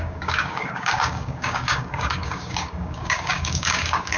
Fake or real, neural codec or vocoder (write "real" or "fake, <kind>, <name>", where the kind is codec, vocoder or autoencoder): fake, codec, DAC